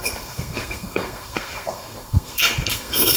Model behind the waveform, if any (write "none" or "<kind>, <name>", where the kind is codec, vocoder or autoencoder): codec, SNAC